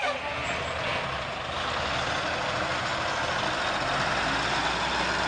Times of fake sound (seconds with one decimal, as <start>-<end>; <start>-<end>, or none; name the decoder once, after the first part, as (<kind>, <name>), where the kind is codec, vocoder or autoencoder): none